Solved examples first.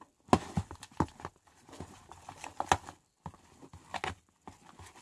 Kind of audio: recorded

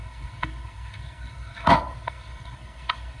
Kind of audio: remade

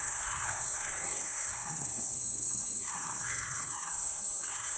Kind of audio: remade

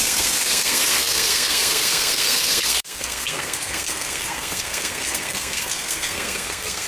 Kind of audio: remade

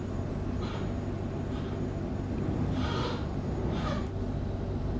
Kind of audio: recorded